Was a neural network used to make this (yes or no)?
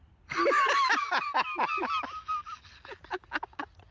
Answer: no